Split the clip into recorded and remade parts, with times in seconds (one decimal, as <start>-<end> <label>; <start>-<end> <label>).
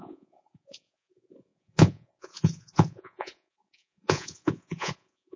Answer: 0.0-5.4 remade